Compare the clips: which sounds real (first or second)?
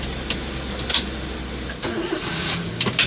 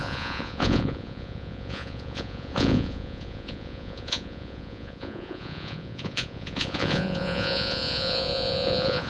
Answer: first